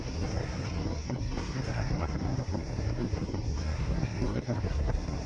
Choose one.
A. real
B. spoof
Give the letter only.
B